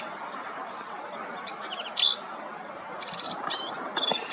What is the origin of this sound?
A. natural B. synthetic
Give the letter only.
A